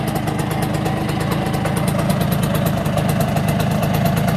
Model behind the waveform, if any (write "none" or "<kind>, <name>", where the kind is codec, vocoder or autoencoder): none